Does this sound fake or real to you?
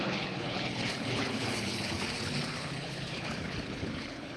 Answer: fake